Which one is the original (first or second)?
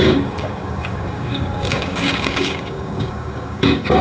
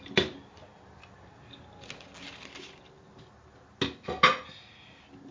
second